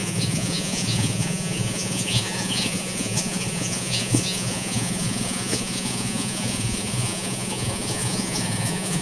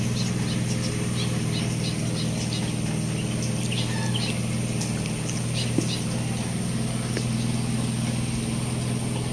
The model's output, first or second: first